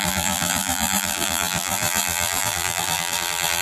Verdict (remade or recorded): remade